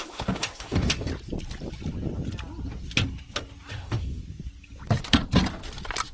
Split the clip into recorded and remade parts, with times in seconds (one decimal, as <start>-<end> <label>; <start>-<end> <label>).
0.0-1.1 remade; 1.1-3.7 recorded; 3.7-4.2 remade; 4.2-6.1 recorded